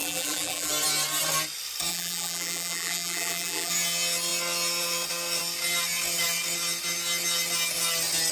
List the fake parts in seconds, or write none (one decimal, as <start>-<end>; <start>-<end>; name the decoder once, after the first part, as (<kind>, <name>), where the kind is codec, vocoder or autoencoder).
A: 0.0-0.7 (vocoder, BigVGAN v2); 1.9-3.7